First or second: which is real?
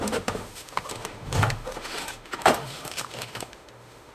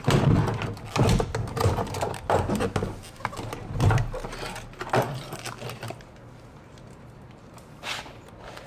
second